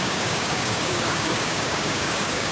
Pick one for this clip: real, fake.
fake